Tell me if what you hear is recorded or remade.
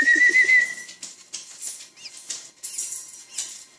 recorded